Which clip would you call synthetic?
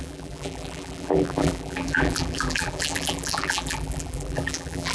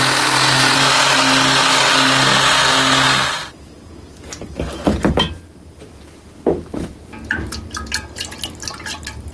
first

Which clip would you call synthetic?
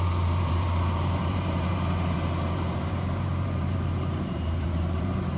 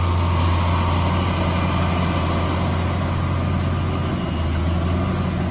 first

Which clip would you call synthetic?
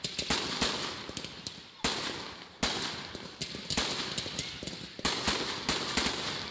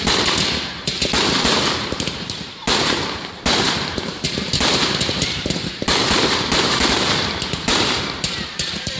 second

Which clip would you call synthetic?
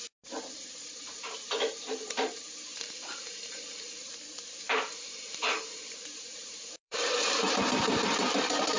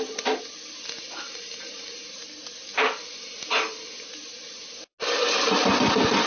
first